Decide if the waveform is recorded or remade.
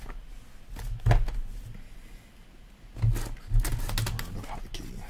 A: recorded